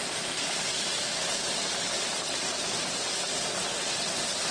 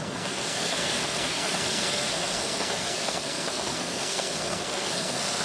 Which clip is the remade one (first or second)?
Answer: second